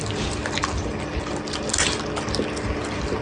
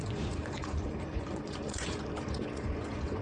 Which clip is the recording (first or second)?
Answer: first